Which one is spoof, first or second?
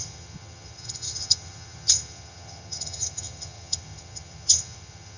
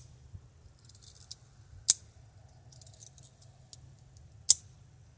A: first